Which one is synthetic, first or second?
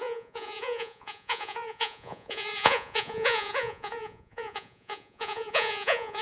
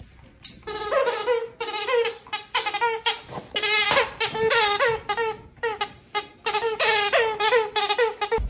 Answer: first